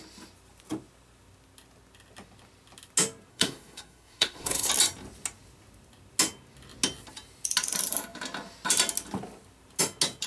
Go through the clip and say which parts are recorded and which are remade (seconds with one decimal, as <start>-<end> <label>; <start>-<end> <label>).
0.0-3.3 recorded; 3.3-4.7 remade; 4.7-10.3 recorded